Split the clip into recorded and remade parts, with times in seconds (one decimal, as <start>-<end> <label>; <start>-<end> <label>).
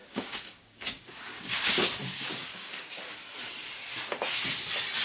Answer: 0.0-3.0 remade; 3.0-5.0 recorded